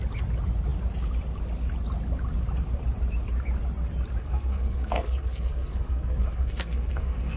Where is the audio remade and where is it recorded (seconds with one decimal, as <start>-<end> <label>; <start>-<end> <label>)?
0.0-4.2 recorded; 4.2-7.4 remade